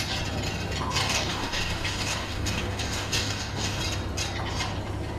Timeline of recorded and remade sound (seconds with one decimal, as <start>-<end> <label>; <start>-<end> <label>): 0.0-1.0 recorded; 1.0-3.8 remade; 3.8-5.2 recorded